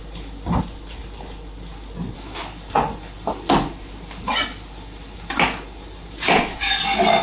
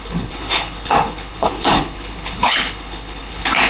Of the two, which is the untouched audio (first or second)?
first